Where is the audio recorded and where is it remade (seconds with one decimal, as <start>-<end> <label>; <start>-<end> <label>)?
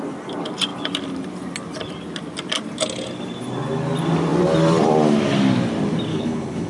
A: 0.0-6.1 recorded; 6.1-6.7 remade